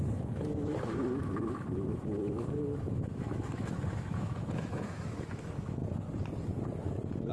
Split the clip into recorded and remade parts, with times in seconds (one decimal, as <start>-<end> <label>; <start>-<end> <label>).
0.0-5.8 remade; 5.8-7.3 recorded